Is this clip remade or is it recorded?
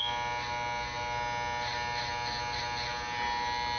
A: recorded